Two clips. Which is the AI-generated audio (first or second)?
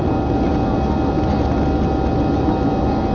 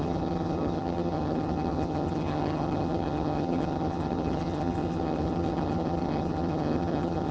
second